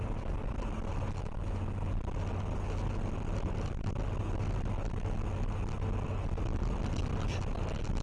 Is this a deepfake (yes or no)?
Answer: no